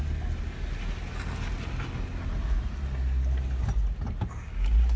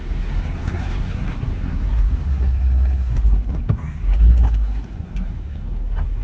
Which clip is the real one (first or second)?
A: first